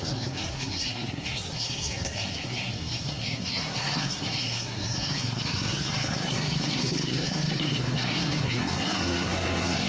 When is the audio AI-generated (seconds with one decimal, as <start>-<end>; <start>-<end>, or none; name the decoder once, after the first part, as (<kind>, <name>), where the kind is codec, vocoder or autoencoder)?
0.0-9.9 (codec, SNAC)